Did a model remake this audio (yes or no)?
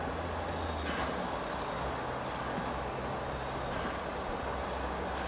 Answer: no